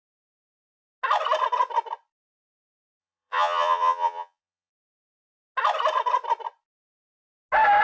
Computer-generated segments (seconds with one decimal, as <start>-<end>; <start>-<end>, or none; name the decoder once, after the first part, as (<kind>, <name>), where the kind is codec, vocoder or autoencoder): 3.0-4.7 (vocoder, Vocos)